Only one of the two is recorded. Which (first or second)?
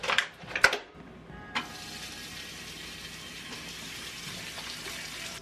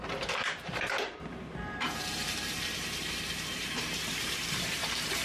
first